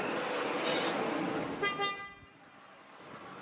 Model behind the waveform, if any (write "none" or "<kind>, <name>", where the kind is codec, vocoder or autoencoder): none